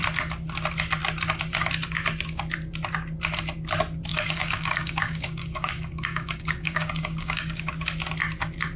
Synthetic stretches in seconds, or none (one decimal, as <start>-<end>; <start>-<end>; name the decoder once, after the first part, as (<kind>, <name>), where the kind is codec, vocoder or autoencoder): 4.1-7.7 (codec, DAC)